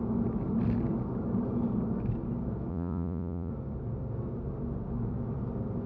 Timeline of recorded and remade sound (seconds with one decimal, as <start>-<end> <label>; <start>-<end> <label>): 0.0-2.7 recorded; 2.7-3.5 remade; 3.5-5.9 recorded